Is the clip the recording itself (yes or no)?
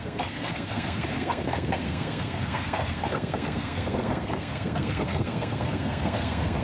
no